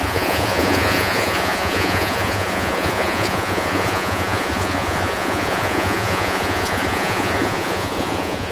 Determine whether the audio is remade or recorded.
remade